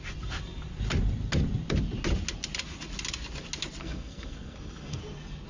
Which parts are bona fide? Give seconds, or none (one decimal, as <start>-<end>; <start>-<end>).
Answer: 0.0-3.8; 5.0-5.5